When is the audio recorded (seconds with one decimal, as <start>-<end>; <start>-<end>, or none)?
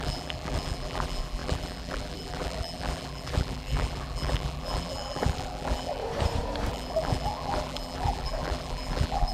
6.0-6.7